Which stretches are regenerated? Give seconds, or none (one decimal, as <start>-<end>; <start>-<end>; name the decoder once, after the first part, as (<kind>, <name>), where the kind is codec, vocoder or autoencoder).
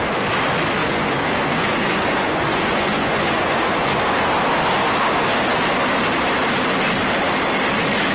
0.8-4.0 (vocoder, Vocos)